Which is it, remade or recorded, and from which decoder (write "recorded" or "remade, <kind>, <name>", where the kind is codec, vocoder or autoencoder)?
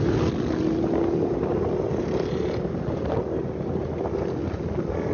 recorded